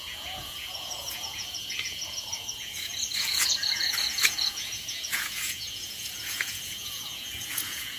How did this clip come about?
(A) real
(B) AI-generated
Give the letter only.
B